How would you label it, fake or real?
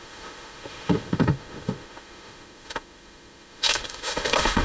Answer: fake